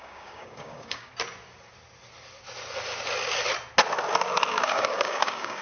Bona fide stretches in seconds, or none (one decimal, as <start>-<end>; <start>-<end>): 1.1-4.5